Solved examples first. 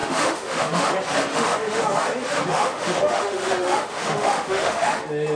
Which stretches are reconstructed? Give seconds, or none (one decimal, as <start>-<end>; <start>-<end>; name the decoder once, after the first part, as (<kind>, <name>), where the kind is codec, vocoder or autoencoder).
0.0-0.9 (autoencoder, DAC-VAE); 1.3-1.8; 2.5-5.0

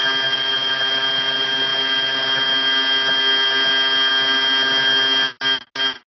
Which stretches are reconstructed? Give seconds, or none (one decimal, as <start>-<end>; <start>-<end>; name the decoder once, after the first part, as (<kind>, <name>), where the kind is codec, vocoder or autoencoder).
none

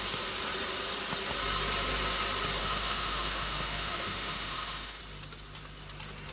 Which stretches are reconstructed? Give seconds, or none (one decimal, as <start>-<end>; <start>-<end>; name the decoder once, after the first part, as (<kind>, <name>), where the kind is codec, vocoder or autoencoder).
2.6-5.0 (autoencoder, DAC-VAE)

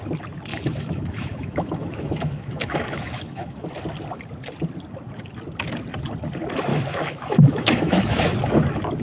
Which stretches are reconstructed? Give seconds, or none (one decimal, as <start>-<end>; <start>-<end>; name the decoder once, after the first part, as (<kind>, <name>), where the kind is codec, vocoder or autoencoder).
0.5-3.8 (autoencoder, DAC-VAE); 6.7-8.2

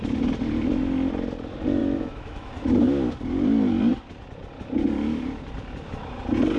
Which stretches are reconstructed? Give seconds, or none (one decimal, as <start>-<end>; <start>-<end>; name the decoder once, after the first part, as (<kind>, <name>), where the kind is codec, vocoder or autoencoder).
1.8-2.5 (autoencoder, DAC-VAE)

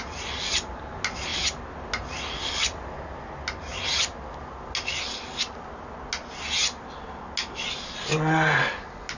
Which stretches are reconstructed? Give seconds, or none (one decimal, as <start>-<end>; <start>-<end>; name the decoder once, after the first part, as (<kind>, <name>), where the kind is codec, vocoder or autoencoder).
none